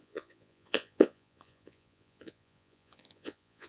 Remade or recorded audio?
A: remade